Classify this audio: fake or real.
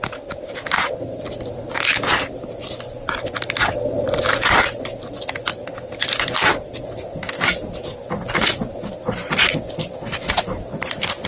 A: real